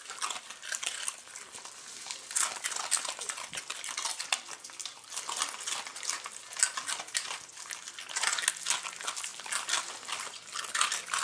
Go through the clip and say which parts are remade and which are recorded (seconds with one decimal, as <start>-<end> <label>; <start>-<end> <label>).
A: 0.0-11.2 recorded